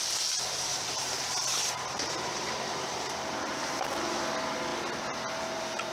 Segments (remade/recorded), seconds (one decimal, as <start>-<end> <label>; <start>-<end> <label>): 0.0-0.7 recorded; 0.7-4.2 remade; 4.2-5.9 recorded